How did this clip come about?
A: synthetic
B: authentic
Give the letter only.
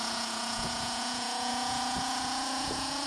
A